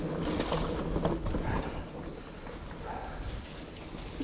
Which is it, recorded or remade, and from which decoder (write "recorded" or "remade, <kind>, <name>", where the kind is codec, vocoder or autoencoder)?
recorded